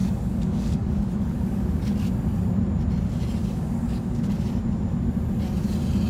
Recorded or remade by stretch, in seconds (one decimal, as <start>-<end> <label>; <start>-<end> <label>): 0.0-1.8 remade; 1.8-3.4 recorded; 3.4-4.5 remade; 4.5-6.1 recorded